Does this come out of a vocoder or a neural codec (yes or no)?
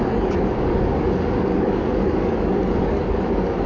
yes